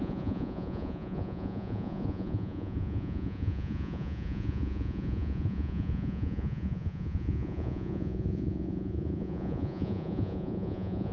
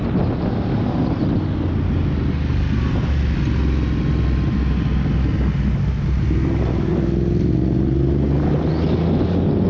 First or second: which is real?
second